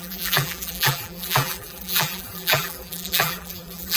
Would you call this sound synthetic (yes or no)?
yes